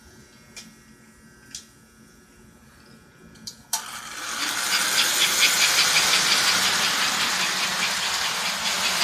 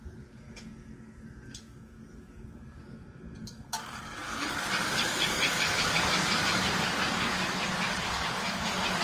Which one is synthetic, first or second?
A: second